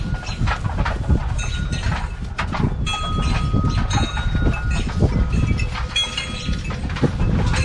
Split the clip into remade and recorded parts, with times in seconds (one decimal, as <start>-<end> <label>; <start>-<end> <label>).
0.0-7.6 recorded